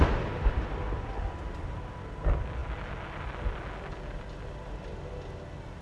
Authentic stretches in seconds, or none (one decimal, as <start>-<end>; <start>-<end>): 0.0-5.8